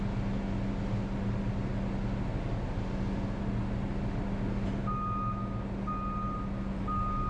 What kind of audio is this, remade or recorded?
recorded